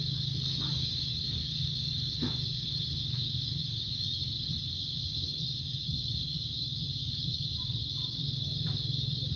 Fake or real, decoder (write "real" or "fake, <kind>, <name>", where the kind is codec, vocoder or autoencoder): fake, codec, DAC